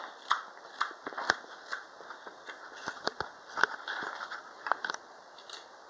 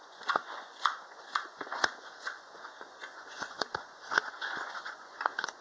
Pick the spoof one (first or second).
second